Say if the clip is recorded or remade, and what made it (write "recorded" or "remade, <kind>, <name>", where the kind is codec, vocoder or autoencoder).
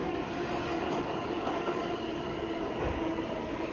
remade, codec, DAC